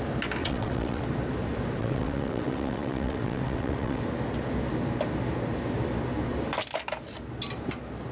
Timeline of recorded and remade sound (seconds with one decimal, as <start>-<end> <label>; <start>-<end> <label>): 0.0-0.4 recorded; 0.4-1.0 remade; 1.0-1.8 recorded; 1.8-4.0 remade; 4.0-8.1 recorded